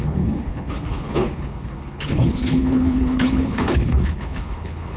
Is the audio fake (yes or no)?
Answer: yes